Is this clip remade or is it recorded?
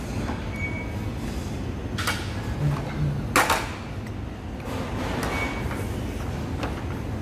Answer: recorded